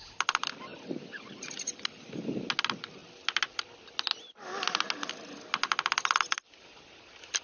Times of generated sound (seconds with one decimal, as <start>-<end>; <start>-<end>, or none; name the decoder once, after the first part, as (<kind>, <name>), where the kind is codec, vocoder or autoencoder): none